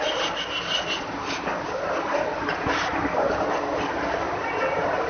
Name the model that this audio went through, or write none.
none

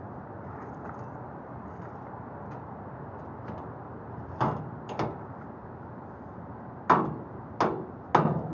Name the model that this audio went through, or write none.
none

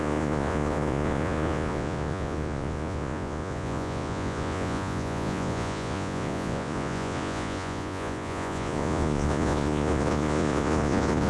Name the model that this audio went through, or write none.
vocoder, Vocos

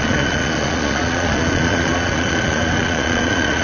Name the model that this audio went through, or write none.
vocoder, Vocos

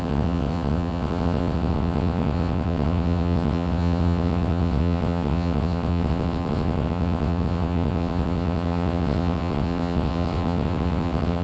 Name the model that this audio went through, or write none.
vocoder, WaveNeXt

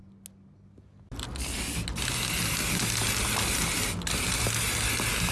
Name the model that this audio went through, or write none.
none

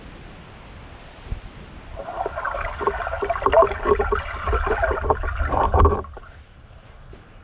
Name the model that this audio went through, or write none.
none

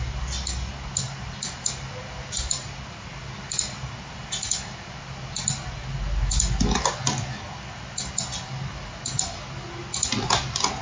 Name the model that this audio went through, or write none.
none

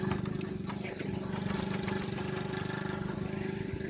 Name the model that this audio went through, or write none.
none